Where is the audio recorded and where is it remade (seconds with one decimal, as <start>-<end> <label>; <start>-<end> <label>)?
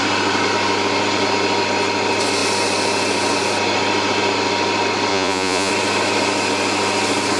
0.0-5.1 recorded; 5.1-5.7 remade; 5.7-7.4 recorded